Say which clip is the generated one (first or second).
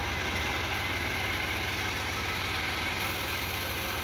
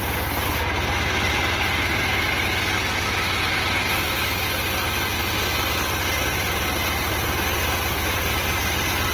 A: first